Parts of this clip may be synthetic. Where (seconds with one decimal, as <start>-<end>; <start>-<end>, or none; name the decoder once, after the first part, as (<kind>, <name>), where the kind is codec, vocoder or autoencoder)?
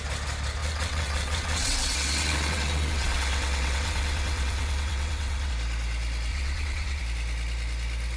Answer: 0.6-5.5 (vocoder, WaveNeXt); 6.3-7.0